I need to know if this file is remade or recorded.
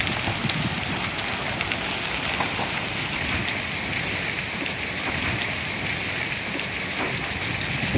recorded